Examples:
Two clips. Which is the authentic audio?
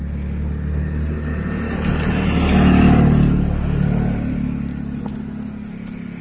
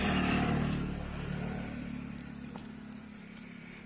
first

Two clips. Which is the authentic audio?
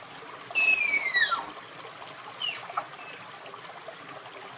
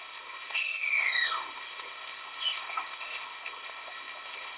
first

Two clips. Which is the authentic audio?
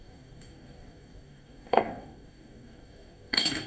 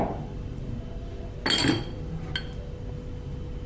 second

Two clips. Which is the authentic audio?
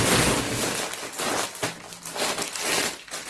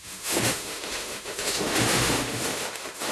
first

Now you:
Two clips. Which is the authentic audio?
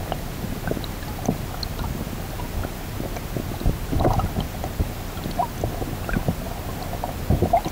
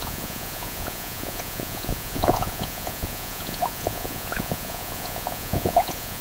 first